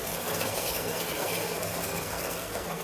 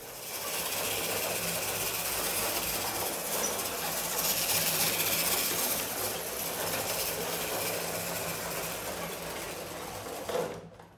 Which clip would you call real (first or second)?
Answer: second